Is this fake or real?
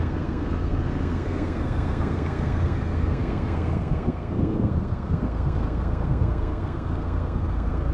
fake